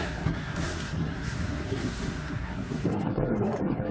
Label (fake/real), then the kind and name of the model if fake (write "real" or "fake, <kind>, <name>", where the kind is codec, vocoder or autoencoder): fake, codec, SNAC